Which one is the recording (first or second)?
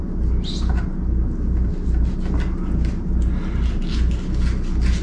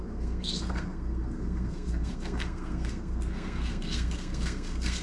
first